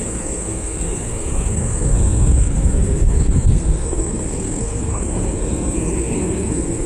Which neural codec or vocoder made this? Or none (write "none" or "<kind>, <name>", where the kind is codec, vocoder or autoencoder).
codec, SNAC